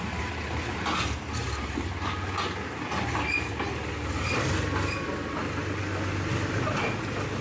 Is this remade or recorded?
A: recorded